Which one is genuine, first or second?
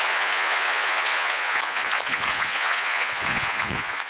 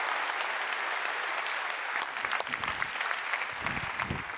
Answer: second